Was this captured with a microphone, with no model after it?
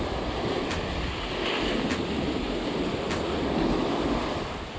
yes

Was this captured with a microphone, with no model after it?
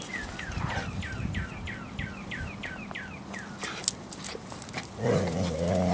yes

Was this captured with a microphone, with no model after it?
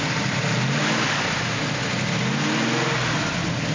yes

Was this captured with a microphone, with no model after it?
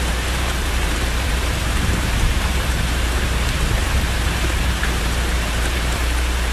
no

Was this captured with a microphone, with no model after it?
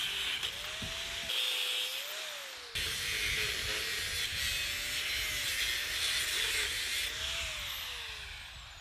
yes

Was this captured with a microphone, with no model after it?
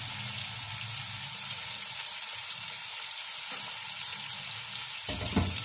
yes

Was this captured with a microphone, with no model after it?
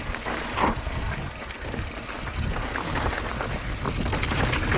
yes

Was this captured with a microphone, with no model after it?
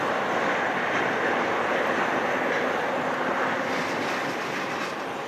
yes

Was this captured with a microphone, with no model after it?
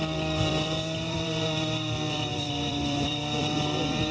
no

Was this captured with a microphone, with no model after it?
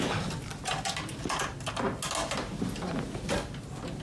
yes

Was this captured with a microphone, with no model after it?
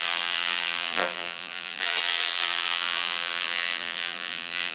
no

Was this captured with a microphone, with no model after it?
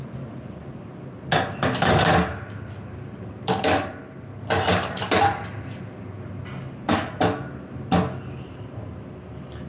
yes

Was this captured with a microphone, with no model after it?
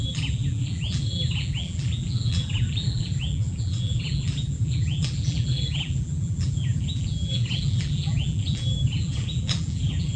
no